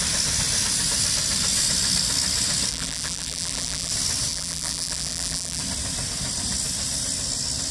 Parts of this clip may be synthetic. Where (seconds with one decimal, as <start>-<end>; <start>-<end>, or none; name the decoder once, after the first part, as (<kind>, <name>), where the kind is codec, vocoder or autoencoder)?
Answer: 2.7-3.9 (vocoder, BigVGAN v2); 4.3-5.6

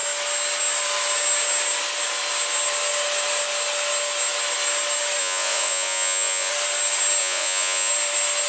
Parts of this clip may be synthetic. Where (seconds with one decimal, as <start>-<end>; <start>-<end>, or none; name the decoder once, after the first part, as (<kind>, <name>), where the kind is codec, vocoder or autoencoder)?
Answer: 5.2-6.5 (vocoder, Vocos); 7.2-7.9